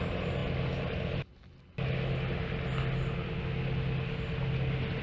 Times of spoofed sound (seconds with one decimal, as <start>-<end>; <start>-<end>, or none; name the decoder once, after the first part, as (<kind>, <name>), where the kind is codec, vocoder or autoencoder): none